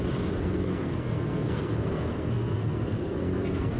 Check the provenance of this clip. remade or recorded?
remade